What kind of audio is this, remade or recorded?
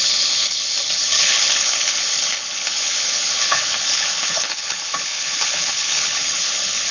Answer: remade